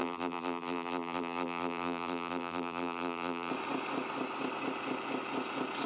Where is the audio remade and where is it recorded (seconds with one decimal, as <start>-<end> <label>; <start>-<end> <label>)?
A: 0.0-3.5 remade; 3.5-5.9 recorded